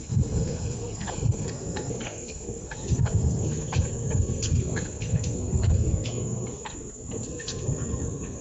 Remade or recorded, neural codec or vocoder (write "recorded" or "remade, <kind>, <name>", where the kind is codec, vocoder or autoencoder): remade, codec, SNAC